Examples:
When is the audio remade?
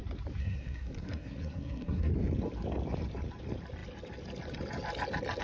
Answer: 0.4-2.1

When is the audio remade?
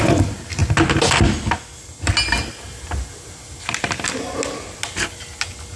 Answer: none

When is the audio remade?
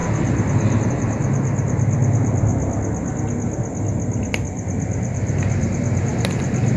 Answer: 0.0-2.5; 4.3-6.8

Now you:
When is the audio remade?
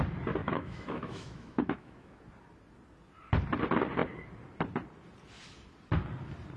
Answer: 0.4-2.2